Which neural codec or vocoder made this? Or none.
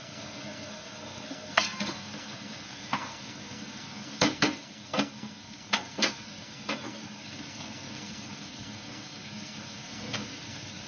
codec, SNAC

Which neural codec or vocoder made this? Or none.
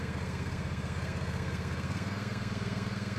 codec, SNAC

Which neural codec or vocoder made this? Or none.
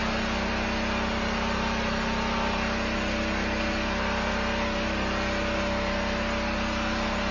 none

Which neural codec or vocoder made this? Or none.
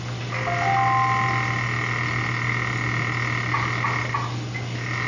none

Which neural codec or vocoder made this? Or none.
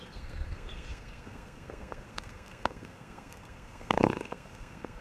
codec, SNAC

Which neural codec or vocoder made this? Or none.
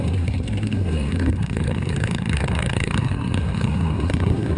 codec, SNAC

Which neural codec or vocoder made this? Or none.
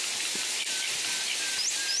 none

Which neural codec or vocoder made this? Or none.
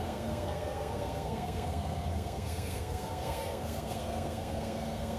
codec, SNAC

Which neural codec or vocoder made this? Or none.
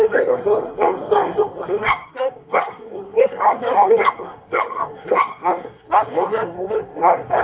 codec, SNAC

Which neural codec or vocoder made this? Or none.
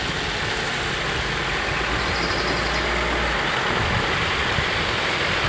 none